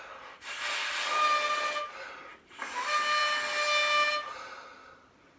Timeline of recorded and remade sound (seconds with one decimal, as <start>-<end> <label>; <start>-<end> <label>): 0.0-5.4 recorded